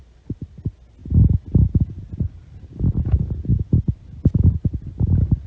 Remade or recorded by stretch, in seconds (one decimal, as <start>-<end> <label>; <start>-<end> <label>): 0.0-5.5 recorded